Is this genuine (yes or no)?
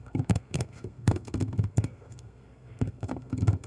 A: no